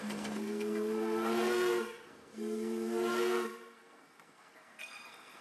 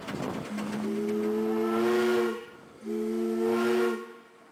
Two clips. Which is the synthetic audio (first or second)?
first